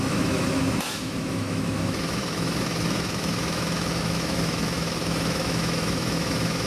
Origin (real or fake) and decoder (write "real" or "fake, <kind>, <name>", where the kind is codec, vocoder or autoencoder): fake, autoencoder, DAC-VAE